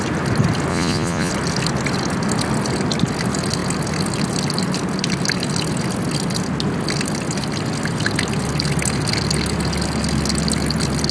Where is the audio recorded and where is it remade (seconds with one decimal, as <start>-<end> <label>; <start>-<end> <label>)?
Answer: 0.0-0.7 recorded; 0.7-1.3 remade; 1.3-11.1 recorded